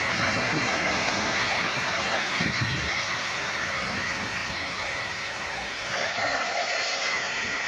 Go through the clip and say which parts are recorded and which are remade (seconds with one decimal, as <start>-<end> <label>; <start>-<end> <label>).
0.0-7.7 remade